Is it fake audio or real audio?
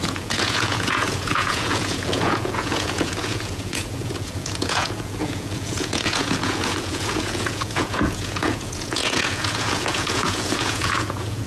fake